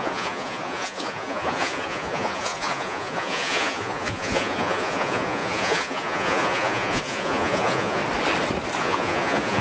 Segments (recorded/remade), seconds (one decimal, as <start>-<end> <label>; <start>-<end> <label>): 0.0-8.0 remade; 8.0-8.8 recorded; 8.8-9.6 remade